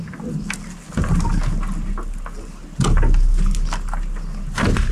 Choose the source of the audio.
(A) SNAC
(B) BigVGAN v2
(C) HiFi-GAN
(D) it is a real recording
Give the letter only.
D